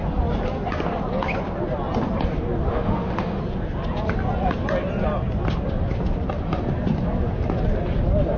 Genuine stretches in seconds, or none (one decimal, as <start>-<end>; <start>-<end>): 0.0-2.7; 3.4-8.4